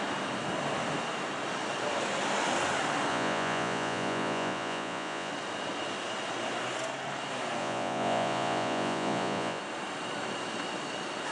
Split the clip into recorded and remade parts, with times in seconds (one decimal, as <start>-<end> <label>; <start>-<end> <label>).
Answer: 0.0-3.1 recorded; 3.1-5.3 remade; 5.3-7.6 recorded; 7.6-9.6 remade; 9.6-11.3 recorded